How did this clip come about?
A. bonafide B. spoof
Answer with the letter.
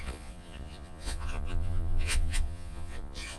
B